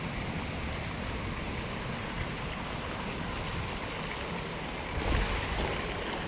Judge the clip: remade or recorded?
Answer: recorded